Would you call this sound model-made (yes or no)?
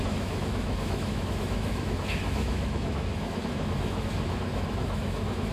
yes